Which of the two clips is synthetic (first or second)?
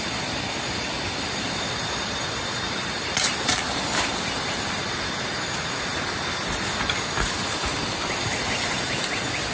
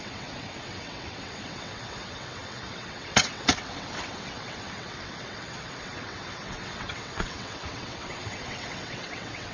second